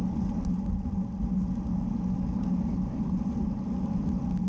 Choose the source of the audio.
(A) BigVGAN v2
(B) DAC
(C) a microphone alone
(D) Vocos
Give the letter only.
C